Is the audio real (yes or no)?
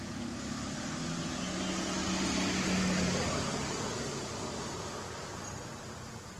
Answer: yes